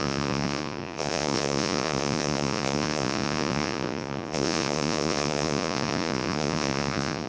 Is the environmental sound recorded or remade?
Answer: remade